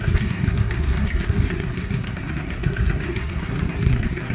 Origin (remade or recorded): remade